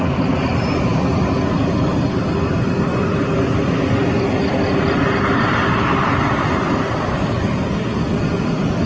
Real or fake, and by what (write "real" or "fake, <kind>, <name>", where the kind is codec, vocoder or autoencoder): real